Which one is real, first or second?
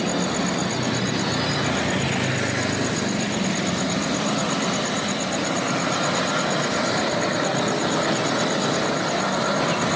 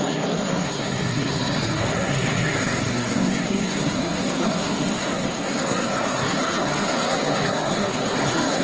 first